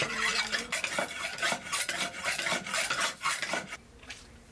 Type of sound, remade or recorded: recorded